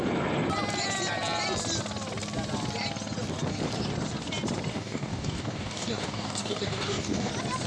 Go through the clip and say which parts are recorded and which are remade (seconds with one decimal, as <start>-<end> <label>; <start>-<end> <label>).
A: 0.0-4.7 recorded; 4.7-7.3 remade; 7.3-7.7 recorded